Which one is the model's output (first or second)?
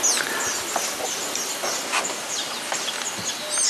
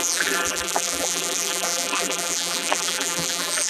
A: second